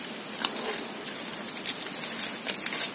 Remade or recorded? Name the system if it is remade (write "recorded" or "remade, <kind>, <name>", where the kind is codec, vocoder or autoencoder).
recorded